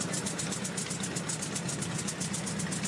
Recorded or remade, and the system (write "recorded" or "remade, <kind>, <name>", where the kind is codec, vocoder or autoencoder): recorded